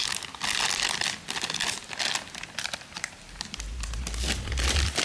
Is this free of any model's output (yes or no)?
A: yes